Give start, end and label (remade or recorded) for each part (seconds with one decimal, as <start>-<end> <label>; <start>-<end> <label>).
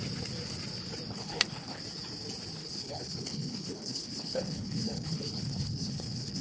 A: 0.0-1.1 recorded; 1.1-1.8 remade; 1.8-2.6 recorded; 2.6-6.4 remade